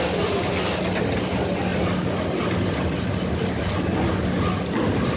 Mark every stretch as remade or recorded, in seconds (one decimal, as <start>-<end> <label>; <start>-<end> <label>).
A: 0.0-5.2 recorded